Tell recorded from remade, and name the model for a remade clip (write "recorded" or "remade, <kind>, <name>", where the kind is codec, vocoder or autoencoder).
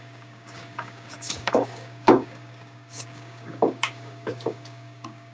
remade, codec, DAC